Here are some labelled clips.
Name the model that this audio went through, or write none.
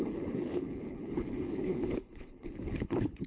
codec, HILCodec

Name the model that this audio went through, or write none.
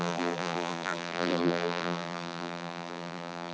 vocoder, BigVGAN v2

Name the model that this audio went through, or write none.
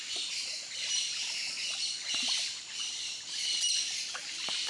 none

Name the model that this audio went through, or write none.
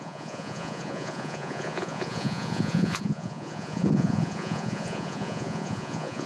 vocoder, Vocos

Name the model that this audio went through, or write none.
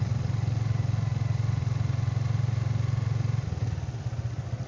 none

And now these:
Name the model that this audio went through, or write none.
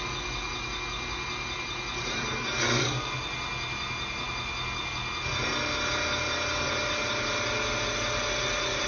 none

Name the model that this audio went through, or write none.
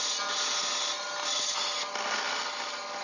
none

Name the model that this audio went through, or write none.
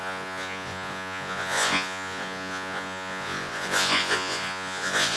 vocoder, Vocos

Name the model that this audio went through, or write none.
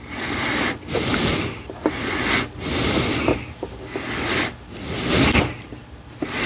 none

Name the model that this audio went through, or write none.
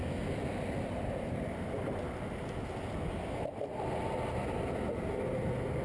none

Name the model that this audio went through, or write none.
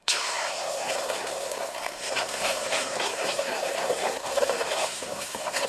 codec, SNAC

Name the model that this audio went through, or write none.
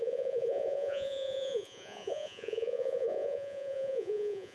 vocoder, Vocos